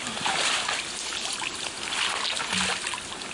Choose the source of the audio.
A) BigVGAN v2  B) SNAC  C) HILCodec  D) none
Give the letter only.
D